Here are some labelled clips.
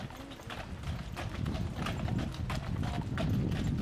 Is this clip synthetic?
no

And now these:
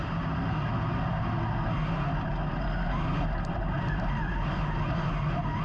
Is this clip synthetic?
no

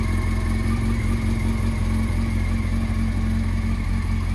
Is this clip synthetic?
no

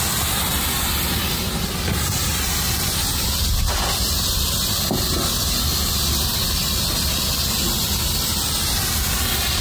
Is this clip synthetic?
no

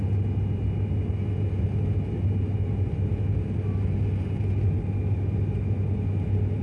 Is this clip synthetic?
no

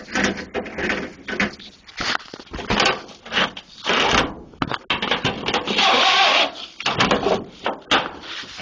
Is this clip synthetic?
no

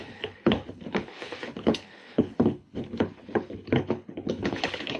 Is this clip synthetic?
yes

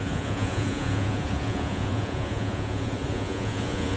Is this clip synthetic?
yes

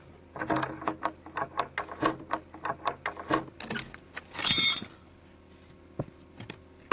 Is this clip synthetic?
no